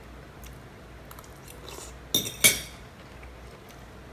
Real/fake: real